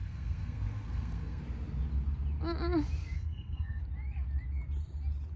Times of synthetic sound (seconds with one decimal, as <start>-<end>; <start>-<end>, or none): 0.0-1.4; 3.0-3.8